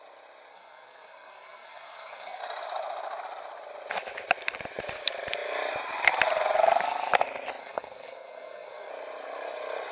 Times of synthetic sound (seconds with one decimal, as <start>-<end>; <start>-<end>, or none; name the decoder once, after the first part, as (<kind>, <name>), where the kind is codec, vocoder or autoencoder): 0.5-2.4 (codec, SNAC); 7.6-8.9